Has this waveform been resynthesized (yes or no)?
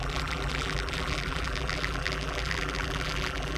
yes